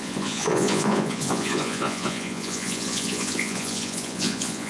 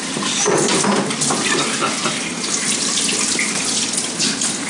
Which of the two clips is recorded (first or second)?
second